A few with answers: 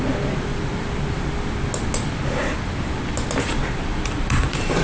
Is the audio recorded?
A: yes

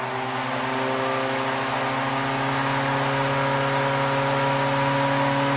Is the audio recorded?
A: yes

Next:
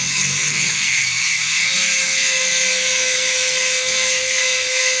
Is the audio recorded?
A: no